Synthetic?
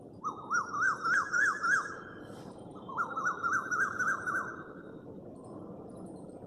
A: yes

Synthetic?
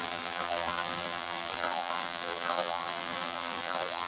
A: yes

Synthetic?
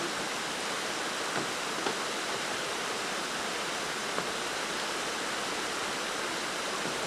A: no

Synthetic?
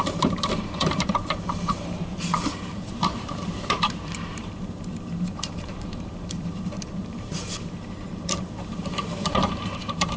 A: yes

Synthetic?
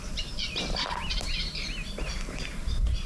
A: yes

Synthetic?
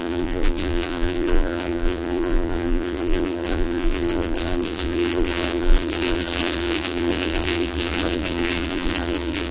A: yes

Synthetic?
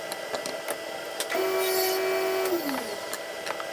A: no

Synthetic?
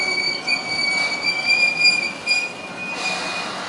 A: no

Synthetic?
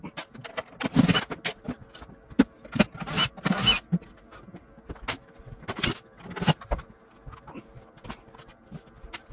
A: no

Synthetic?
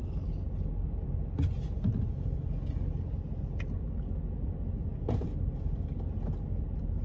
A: no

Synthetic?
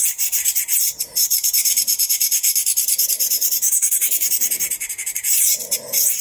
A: yes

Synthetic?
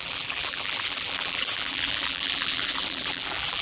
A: yes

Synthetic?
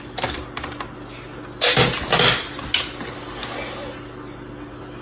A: no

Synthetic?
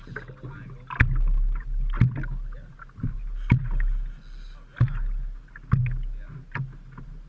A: no